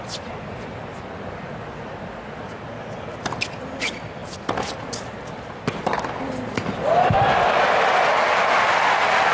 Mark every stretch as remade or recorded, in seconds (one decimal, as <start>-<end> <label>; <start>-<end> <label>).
0.0-9.3 recorded